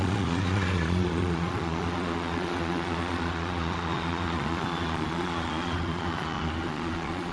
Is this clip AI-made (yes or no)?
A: yes